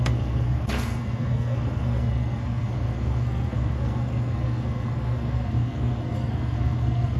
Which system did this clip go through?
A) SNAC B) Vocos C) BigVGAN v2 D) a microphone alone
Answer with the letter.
A